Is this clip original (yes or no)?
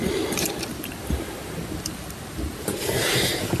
yes